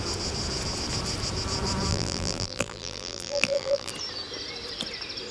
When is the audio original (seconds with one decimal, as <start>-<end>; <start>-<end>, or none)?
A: 0.0-1.9; 3.9-5.3